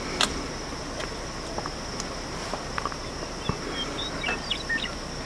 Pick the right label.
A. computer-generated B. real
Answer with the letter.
B